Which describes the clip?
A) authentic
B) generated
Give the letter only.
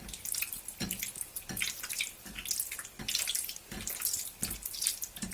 A